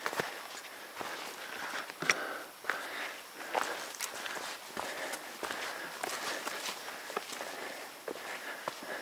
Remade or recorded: recorded